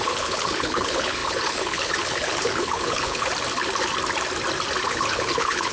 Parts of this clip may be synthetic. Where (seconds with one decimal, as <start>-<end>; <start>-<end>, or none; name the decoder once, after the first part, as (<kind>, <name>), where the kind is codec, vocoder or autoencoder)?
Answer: 0.0-3.3 (codec, HILCodec); 4.9-5.7